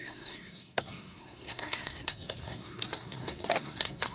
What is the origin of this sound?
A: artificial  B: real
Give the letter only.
A